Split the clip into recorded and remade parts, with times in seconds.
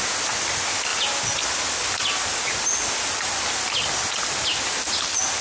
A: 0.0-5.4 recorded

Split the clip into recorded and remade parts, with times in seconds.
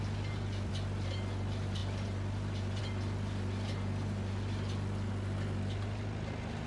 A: 0.0-6.7 recorded